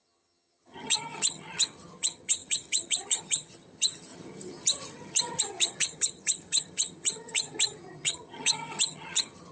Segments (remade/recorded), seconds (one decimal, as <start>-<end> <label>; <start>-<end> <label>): 0.0-9.5 remade